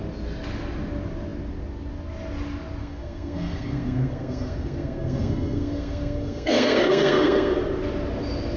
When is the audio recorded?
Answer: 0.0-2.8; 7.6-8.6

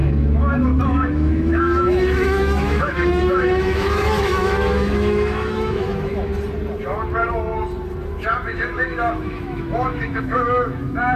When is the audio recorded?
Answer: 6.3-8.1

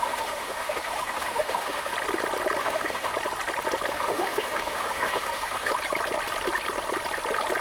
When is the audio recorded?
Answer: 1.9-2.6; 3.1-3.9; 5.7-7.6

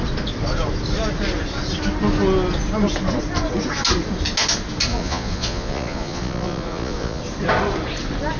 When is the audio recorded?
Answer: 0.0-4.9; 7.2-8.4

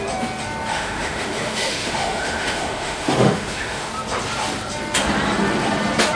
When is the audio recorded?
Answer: 0.0-0.7; 3.9-6.2

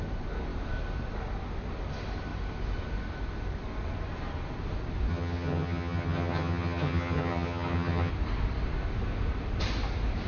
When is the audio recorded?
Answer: 0.0-5.1; 8.1-10.3

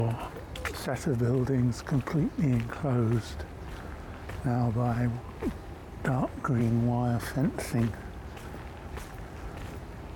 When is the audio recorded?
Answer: 0.0-10.2

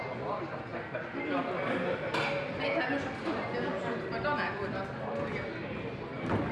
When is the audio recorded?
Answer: 0.0-6.5